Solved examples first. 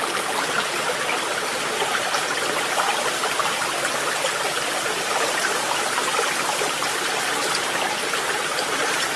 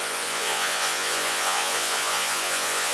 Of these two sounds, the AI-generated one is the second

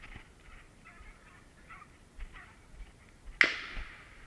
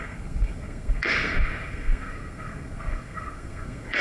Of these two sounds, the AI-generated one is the second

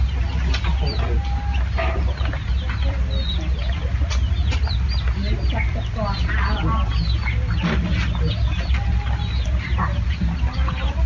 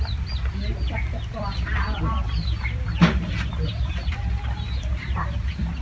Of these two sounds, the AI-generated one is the second